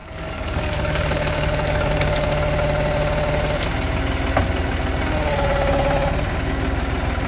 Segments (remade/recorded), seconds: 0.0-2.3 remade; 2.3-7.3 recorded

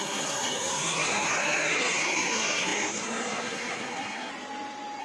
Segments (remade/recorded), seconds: 0.0-4.3 remade; 4.3-5.0 recorded